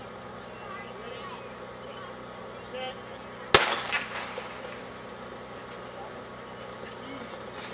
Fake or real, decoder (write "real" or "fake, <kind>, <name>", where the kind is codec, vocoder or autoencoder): real